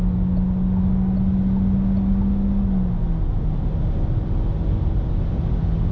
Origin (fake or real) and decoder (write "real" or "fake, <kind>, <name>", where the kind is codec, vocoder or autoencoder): real